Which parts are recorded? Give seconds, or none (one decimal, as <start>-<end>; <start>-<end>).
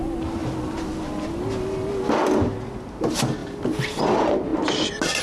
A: 0.0-5.2